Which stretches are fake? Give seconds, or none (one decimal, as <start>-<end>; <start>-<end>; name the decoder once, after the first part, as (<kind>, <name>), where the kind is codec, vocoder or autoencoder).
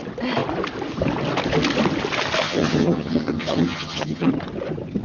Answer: 2.4-4.3 (vocoder, HiFi-GAN)